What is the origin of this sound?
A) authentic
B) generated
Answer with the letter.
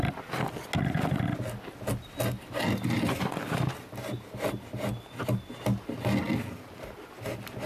A